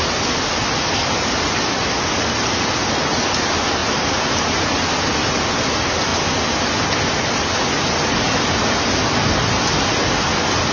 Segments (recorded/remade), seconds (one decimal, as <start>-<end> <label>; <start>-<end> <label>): 0.0-10.7 recorded